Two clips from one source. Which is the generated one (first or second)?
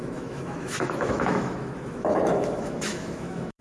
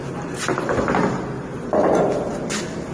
first